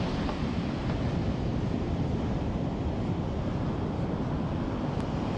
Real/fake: real